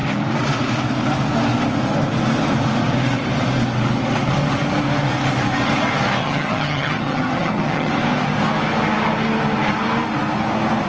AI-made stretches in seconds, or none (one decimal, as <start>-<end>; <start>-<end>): 6.2-7.9